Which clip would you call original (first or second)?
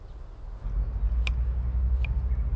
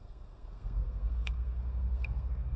first